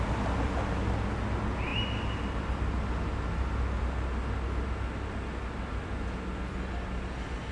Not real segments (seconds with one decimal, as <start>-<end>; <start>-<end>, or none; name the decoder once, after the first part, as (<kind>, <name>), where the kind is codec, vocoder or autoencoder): none